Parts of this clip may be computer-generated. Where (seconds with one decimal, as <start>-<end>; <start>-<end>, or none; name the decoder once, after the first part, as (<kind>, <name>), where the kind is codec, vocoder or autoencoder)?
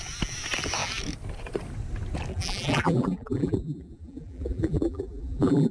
2.3-5.7 (vocoder, BigVGAN v2)